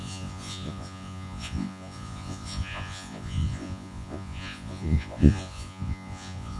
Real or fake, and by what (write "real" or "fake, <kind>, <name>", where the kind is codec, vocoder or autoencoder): fake, vocoder, Vocos